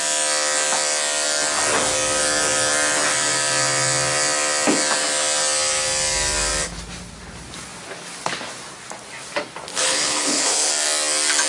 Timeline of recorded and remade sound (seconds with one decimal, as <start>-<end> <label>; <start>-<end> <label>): 0.0-9.7 recorded; 9.7-10.7 remade; 10.7-11.5 recorded

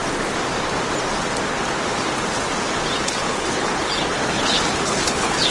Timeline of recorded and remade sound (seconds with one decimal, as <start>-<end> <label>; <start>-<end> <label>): 0.0-3.0 recorded; 3.0-5.5 remade